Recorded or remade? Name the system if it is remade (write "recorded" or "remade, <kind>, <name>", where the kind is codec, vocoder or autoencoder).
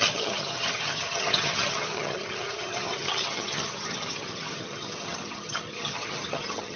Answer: remade, vocoder, HiFi-GAN